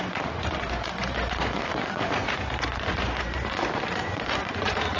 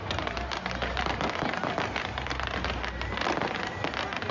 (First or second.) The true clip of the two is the second